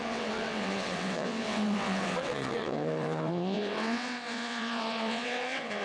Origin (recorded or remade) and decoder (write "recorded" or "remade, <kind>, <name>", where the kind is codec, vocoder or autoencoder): remade, vocoder, WaveNeXt